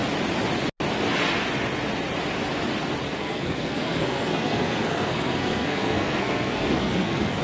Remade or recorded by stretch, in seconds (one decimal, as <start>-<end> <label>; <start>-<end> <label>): 0.0-3.2 recorded; 3.2-7.4 remade